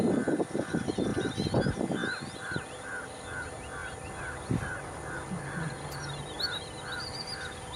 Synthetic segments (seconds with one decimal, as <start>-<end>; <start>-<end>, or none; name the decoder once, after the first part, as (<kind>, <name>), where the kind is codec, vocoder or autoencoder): 2.0-3.1 (vocoder, BigVGAN v2); 3.8-6.4